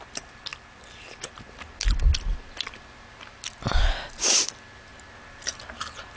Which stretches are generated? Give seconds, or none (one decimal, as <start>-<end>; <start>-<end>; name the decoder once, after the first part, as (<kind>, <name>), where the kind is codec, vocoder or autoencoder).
none

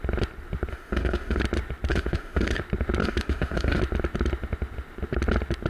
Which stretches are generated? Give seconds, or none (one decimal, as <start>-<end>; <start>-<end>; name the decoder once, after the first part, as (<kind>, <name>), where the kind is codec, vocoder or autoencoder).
0.7-1.4 (autoencoder, DAC-VAE); 1.9-2.6; 3.0-3.8

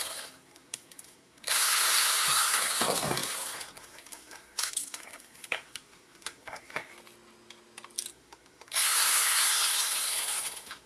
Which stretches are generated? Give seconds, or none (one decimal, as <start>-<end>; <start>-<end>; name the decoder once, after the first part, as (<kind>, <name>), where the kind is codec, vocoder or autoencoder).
0.0-6.9 (codec, SNAC); 8.1-10.9